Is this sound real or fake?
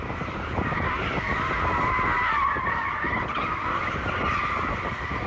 real